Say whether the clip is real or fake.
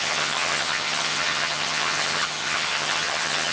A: fake